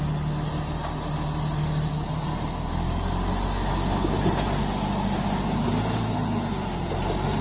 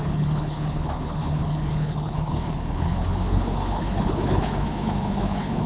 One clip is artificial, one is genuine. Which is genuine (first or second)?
first